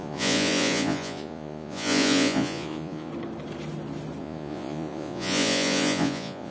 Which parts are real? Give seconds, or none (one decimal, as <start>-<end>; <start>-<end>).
3.1-4.2